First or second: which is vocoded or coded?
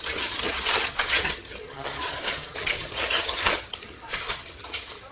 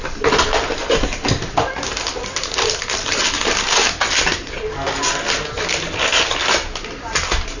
first